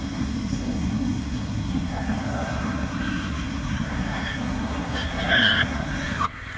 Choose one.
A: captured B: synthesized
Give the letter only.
B